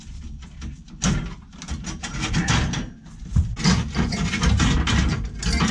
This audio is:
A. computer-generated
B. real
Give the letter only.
B